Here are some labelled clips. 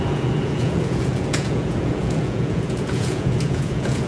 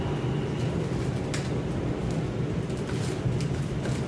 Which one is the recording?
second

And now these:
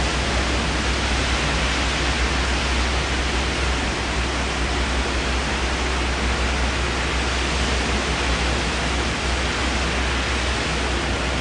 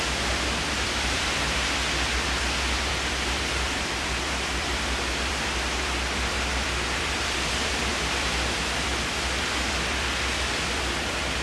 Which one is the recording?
first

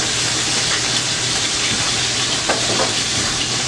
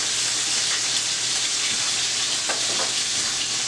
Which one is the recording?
second